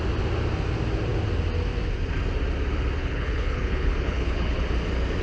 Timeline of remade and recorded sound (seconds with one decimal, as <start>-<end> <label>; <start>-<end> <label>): 0.0-3.0 recorded; 3.0-4.6 remade; 4.6-5.2 recorded